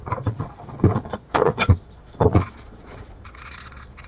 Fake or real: fake